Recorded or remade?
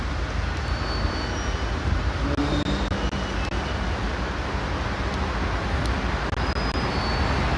recorded